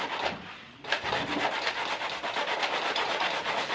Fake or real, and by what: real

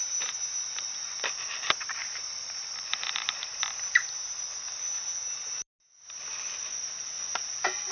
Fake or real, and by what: real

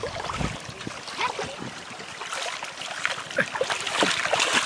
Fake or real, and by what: real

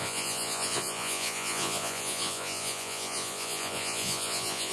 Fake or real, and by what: fake, vocoder, Vocos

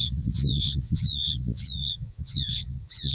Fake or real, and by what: fake, vocoder, Vocos